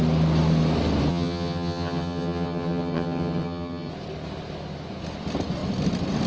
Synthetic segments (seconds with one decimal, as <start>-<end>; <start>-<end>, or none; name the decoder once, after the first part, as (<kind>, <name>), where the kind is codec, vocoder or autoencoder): 1.1-3.9 (vocoder, HiFi-GAN)